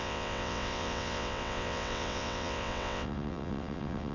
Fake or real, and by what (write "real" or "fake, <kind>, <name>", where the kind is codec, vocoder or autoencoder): fake, vocoder, WaveNeXt